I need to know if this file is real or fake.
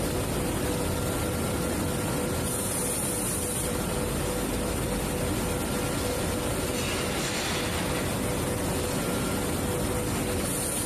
real